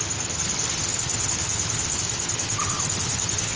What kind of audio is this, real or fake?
fake